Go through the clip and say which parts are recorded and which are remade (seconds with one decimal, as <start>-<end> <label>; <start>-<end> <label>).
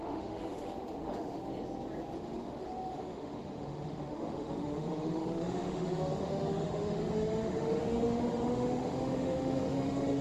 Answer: 0.0-1.5 remade; 1.5-2.2 recorded; 2.2-10.2 remade